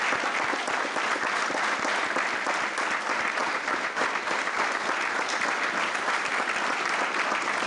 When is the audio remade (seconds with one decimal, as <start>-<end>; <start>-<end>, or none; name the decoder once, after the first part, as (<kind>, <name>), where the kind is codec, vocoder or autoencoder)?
3.4-4.6 (vocoder, BigVGAN v2)